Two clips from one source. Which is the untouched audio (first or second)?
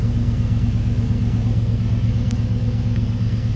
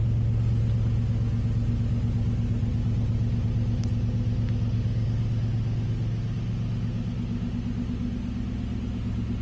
second